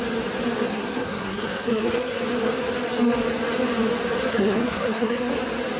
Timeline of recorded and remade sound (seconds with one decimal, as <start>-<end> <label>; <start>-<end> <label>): 0.0-0.7 recorded; 0.7-2.2 remade; 2.2-4.3 recorded; 4.3-5.3 remade; 5.3-5.8 recorded